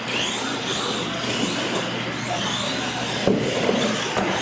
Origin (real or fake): real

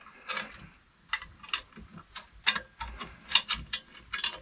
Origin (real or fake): real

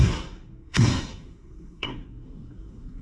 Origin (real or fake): fake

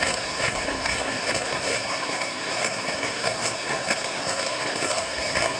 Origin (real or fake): fake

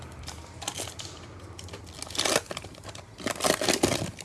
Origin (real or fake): real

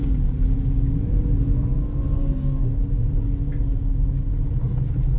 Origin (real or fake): real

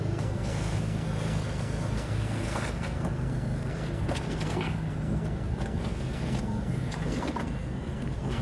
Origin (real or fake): fake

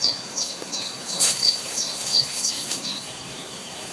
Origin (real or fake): fake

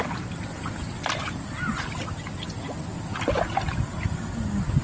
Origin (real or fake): real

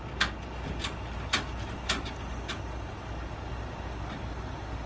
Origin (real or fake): real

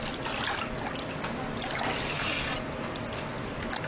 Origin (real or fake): real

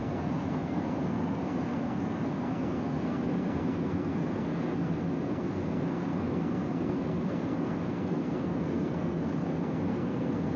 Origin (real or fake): fake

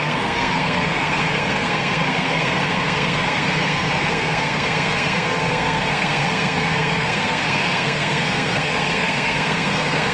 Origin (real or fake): fake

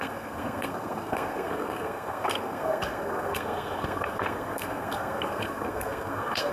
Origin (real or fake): fake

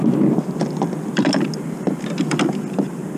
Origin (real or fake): real